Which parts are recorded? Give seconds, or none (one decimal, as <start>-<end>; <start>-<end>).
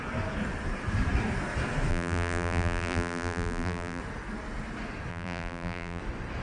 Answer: 0.0-1.9; 4.0-5.1; 6.0-6.4